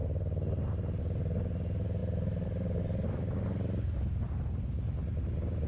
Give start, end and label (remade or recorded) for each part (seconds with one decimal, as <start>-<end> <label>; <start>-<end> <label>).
0.0-5.7 recorded